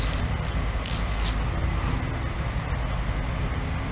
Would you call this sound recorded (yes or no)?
yes